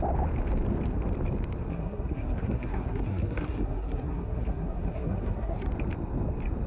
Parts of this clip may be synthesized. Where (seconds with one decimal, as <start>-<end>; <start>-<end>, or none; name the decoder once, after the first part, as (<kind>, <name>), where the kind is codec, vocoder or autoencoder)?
1.7-5.7 (codec, SNAC)